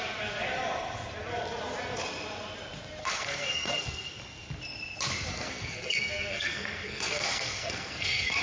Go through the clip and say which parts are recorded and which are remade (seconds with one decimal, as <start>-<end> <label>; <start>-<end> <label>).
0.0-3.0 recorded; 3.0-4.2 remade; 4.2-5.3 recorded; 5.3-8.4 remade